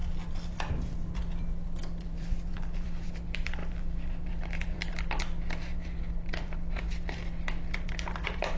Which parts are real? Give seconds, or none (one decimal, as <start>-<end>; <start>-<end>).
3.1-3.6; 5.4-6.3